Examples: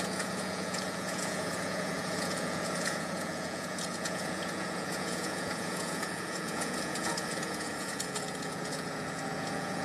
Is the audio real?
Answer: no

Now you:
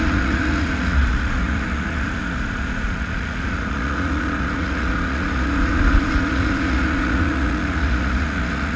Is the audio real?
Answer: no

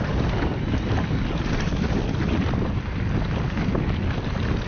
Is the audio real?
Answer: yes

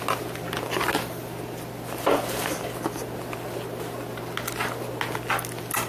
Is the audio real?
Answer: yes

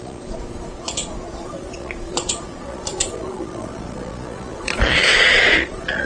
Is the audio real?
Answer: no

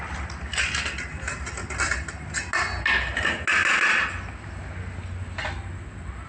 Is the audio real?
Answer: yes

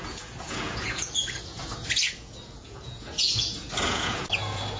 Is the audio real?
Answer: no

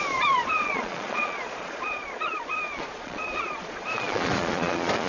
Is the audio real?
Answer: no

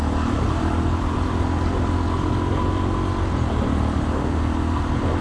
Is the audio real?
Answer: yes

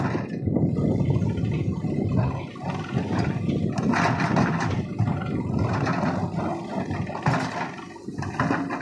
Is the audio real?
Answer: yes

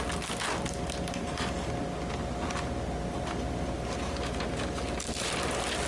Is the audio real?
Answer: yes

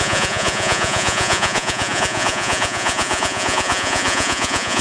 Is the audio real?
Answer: no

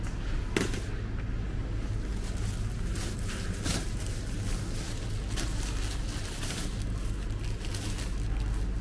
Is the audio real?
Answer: yes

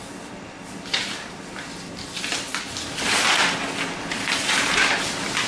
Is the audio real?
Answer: yes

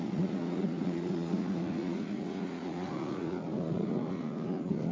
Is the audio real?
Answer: no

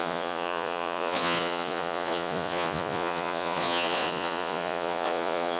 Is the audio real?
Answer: no